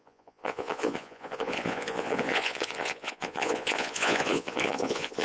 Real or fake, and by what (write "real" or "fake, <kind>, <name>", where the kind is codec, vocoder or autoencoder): fake, vocoder, Vocos